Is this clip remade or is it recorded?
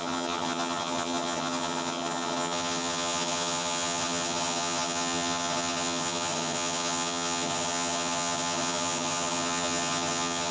remade